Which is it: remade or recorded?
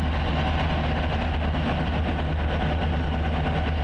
recorded